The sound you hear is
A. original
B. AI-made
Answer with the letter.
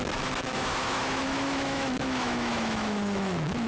B